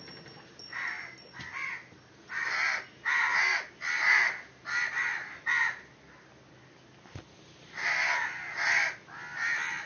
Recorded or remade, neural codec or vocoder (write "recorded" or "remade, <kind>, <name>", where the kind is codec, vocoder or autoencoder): recorded